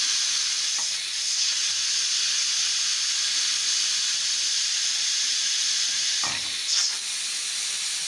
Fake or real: real